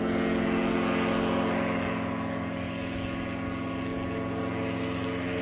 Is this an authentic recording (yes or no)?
yes